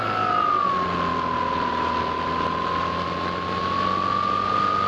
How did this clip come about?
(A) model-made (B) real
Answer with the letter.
B